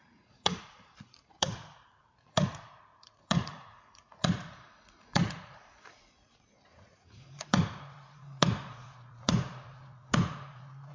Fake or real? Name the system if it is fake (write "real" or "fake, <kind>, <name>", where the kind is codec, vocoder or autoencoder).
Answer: fake, vocoder, Vocos